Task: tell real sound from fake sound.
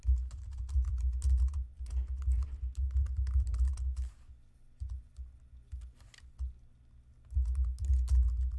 real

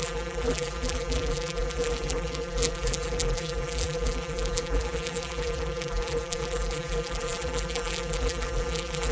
fake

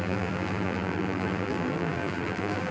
fake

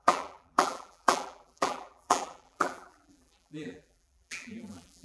fake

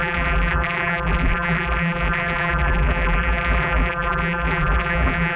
fake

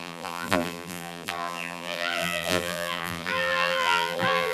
fake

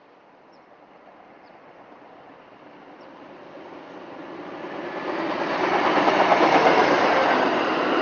fake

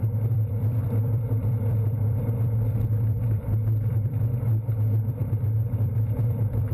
fake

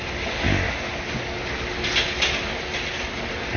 real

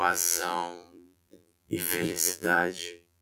fake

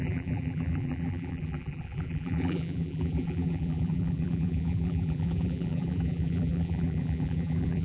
fake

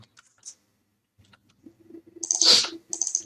real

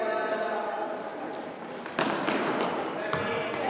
real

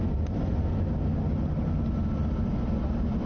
real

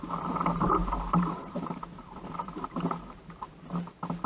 fake